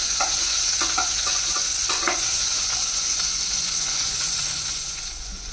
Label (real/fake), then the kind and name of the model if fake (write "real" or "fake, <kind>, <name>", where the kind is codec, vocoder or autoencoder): fake, vocoder, Vocos